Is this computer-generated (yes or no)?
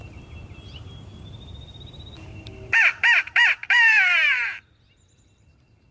yes